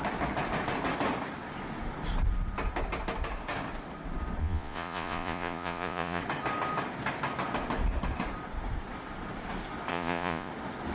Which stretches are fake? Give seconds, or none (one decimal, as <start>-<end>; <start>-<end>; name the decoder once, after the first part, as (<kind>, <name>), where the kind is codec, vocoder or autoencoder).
4.4-6.2 (vocoder, Vocos); 9.9-10.5